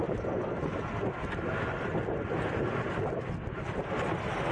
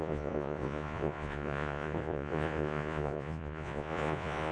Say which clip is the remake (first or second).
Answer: second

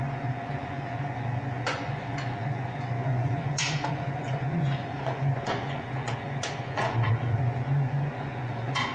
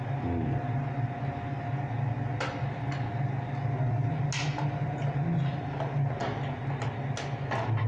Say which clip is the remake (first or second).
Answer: first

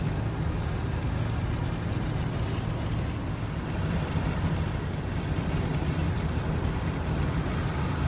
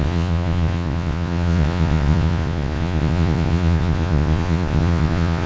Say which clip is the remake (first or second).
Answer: second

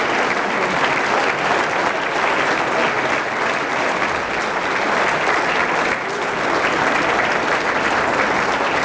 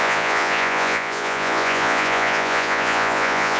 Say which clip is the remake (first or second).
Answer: second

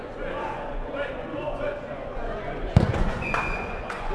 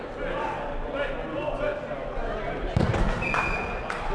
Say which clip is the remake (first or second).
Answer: first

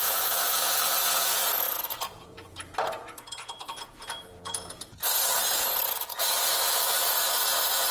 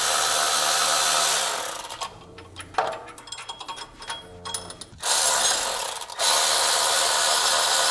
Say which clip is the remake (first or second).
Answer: first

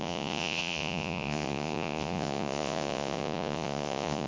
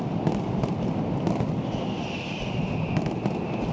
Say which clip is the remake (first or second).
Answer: first